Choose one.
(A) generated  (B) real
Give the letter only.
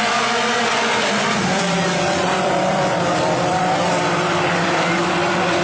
A